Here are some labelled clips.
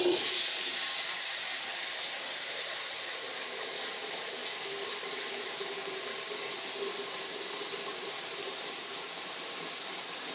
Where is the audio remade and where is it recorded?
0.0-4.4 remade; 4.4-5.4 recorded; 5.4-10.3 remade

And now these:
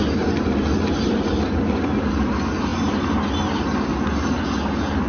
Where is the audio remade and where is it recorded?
0.0-5.1 recorded

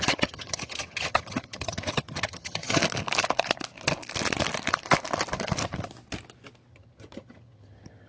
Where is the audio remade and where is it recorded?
0.0-2.8 remade; 2.8-6.7 recorded; 6.7-8.1 remade

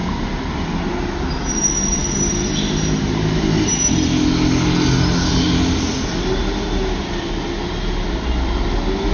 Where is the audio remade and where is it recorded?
0.0-9.1 recorded

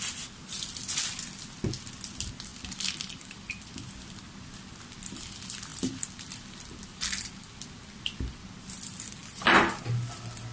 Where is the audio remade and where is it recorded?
0.0-2.5 recorded; 2.5-3.7 remade; 3.7-5.7 recorded; 5.7-8.5 remade; 8.5-9.2 recorded; 9.2-9.8 remade; 9.8-10.5 recorded